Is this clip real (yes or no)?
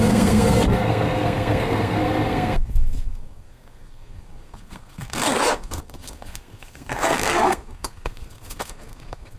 no